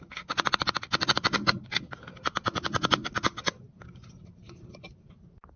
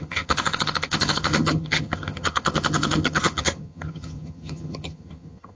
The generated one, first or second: second